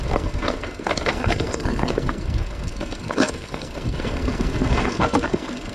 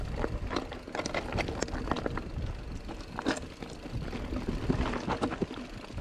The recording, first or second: second